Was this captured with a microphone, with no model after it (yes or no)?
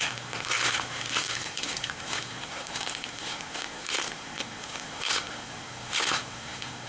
no